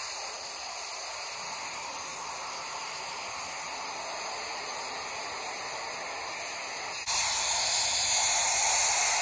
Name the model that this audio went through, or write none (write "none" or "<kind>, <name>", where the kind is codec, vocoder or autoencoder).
none